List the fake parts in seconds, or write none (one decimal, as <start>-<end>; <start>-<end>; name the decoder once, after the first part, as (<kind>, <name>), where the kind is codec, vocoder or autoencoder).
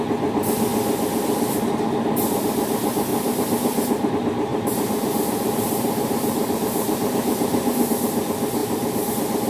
3.1-4.1 (vocoder, BigVGAN v2); 4.5-7.9; 8.6-9.1